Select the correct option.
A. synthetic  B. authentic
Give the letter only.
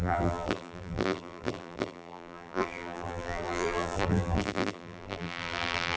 A